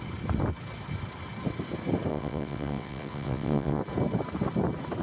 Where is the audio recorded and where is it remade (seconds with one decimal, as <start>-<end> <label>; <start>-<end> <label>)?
0.0-2.1 recorded; 2.1-3.8 remade; 3.8-5.0 recorded